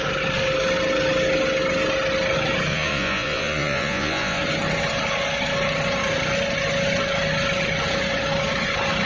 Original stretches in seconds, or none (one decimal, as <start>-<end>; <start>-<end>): 0.0-2.7; 4.4-9.1